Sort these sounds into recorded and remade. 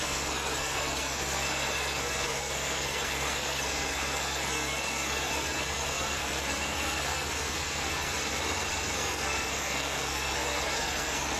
remade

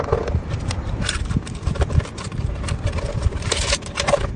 recorded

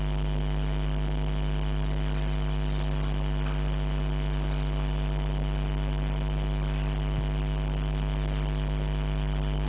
recorded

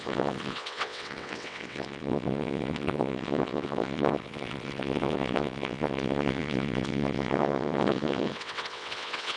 remade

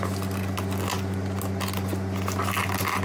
recorded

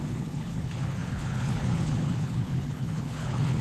remade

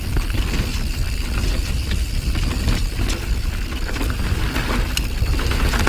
recorded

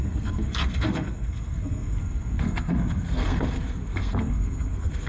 remade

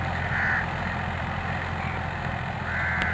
recorded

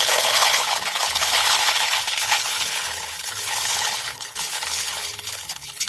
remade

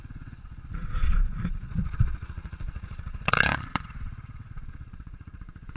remade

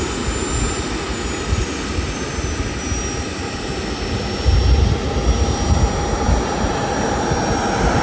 recorded